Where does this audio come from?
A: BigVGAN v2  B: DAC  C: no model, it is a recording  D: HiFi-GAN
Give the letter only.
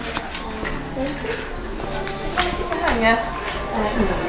C